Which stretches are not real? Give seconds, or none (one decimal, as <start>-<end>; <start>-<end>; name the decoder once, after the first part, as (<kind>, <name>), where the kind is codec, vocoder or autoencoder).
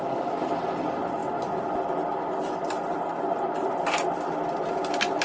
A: none